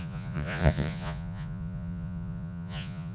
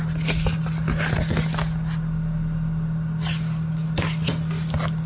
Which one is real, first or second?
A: second